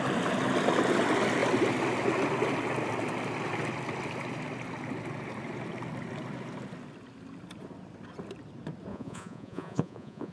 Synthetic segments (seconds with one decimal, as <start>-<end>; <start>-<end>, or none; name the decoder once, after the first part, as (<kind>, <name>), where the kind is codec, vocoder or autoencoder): 8.9-10.3 (vocoder, Vocos)